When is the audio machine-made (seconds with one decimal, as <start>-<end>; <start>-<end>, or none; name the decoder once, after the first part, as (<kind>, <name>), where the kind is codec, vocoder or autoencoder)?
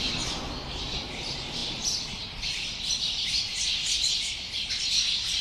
none